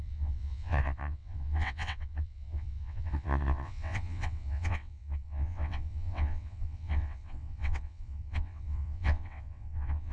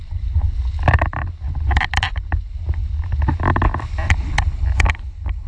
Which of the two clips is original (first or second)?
second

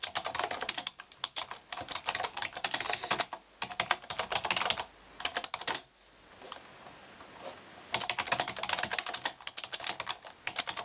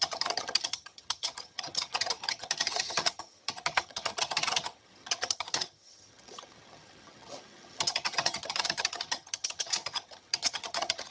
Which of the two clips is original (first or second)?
first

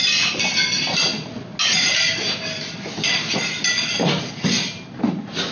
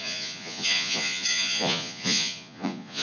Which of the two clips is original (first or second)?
first